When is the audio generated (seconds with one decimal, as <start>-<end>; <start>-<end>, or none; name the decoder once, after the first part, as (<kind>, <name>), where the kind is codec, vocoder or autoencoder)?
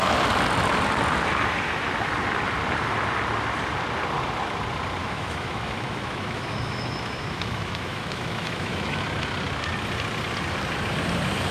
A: 5.0-9.0 (autoencoder, DAC-VAE)